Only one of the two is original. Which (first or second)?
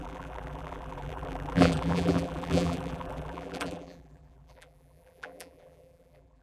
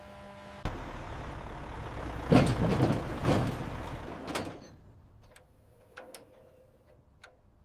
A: second